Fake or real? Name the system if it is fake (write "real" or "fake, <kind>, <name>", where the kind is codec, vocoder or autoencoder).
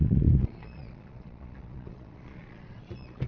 fake, vocoder, Vocos